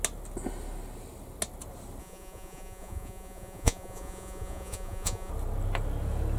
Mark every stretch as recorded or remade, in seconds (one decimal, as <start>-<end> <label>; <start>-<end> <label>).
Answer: 0.0-2.0 recorded; 2.0-5.3 remade; 5.3-6.4 recorded